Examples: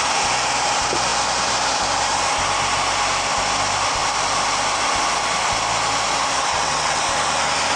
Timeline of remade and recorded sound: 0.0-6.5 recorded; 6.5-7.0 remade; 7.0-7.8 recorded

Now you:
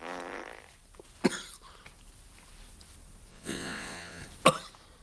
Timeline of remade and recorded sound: 0.0-3.3 recorded; 3.3-4.2 remade; 4.2-5.0 recorded

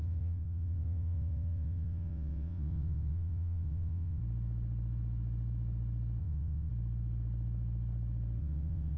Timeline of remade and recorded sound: 0.0-4.2 remade; 4.2-6.2 recorded; 6.2-6.7 remade; 6.7-8.4 recorded; 8.4-9.0 remade

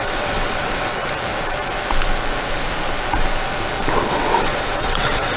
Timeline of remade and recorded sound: 0.0-0.9 remade; 0.9-4.1 recorded; 4.1-5.4 remade

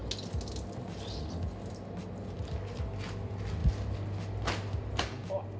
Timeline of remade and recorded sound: 0.0-5.6 recorded

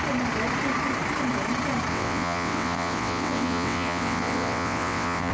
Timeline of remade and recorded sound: 0.0-1.9 recorded; 1.9-5.3 remade

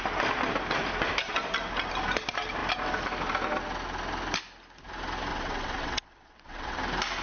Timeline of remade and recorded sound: 0.0-5.3 recorded; 5.3-6.8 remade; 6.8-7.2 recorded